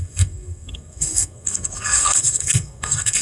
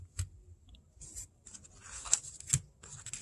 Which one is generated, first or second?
first